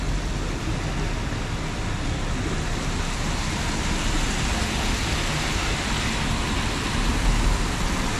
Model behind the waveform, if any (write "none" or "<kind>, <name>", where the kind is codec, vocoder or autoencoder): none